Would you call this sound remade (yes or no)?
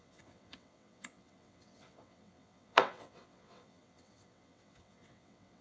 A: yes